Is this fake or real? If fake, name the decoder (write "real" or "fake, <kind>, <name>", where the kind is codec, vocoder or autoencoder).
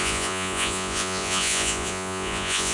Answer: fake, vocoder, Vocos